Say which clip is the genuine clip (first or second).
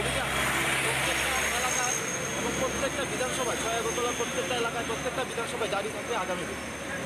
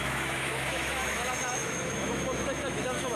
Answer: first